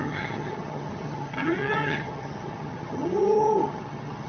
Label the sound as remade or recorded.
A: remade